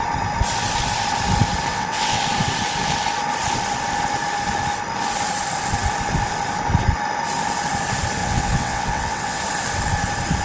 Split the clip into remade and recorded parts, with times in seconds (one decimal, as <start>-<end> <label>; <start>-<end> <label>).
0.0-1.7 recorded; 1.7-2.2 remade; 2.2-8.2 recorded; 8.2-9.4 remade; 9.4-10.4 recorded